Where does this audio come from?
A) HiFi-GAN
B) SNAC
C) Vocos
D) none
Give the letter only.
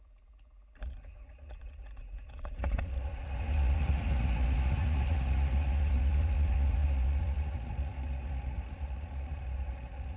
C